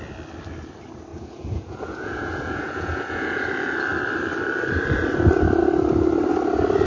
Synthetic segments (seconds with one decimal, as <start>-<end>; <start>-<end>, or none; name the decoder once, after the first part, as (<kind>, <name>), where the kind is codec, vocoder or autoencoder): 1.1-3.5 (vocoder, Vocos)